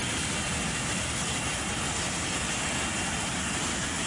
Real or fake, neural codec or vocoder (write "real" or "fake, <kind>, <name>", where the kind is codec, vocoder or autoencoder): real